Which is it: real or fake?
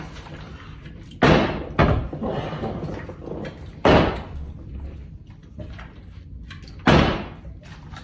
real